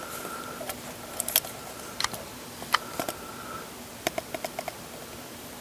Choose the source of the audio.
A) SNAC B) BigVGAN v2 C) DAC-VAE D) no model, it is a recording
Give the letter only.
D